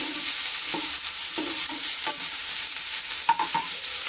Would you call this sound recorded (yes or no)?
no